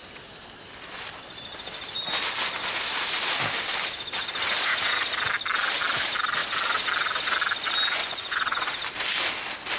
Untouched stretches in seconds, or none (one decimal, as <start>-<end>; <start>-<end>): 0.0-8.0; 8.7-9.8